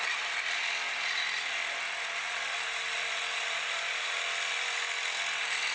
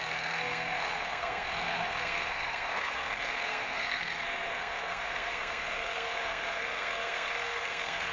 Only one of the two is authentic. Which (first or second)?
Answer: first